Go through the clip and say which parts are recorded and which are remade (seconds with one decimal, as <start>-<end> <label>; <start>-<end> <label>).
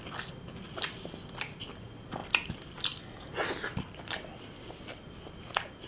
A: 0.0-5.9 recorded